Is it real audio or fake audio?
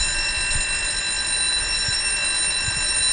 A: real